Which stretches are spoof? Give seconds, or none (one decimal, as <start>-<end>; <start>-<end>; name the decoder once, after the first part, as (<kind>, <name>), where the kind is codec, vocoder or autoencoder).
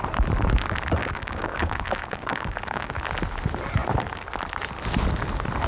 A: 1.0-3.0 (codec, DAC)